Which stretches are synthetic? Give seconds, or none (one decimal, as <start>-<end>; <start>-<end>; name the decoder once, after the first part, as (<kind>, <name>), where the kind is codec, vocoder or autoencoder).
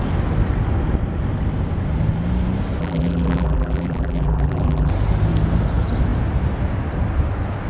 2.8-4.9 (vocoder, BigVGAN v2)